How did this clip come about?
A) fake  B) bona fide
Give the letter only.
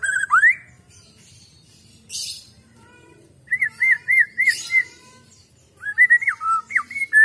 A